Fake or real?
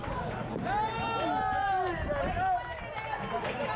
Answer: real